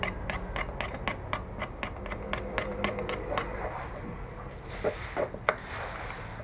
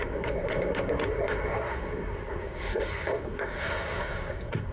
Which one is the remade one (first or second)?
second